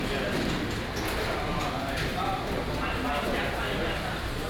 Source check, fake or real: real